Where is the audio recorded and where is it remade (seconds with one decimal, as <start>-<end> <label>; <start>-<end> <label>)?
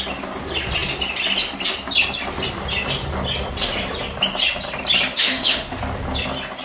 0.0-5.2 recorded; 5.2-5.8 remade; 5.8-6.6 recorded